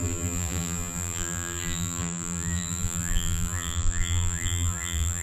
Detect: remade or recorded remade